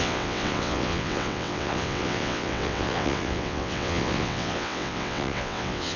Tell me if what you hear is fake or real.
fake